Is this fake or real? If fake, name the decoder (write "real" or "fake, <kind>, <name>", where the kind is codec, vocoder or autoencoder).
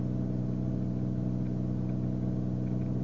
real